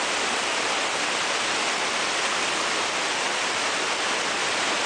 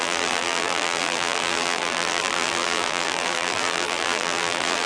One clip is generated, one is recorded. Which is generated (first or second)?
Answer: second